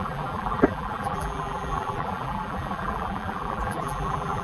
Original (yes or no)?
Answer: no